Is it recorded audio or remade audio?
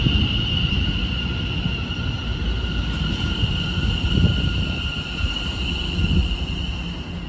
recorded